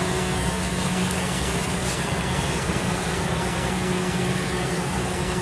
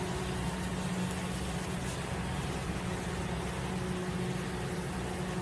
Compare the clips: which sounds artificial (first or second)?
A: first